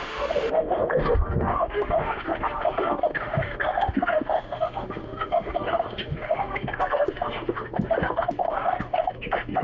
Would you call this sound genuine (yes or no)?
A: no